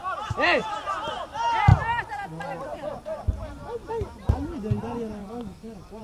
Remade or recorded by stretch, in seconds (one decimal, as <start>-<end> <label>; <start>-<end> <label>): 0.0-5.2 recorded; 5.2-6.0 remade